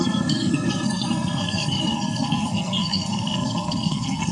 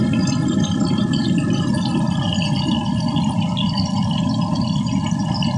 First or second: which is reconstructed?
first